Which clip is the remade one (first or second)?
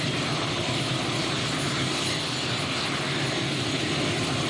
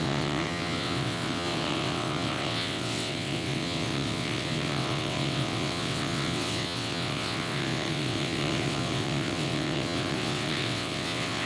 second